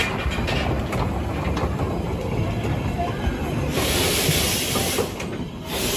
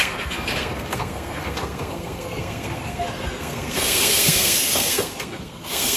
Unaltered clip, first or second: first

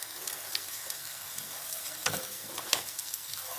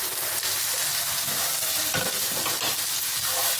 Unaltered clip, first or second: second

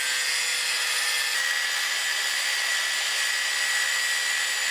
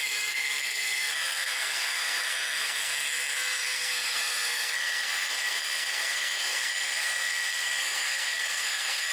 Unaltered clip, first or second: first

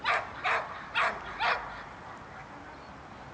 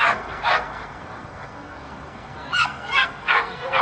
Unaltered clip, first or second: first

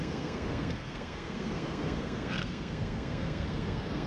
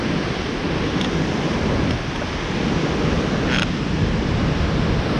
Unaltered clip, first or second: second